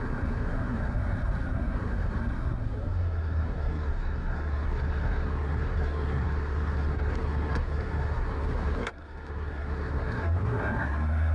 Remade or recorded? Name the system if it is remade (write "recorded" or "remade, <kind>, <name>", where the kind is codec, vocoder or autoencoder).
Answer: remade, codec, SNAC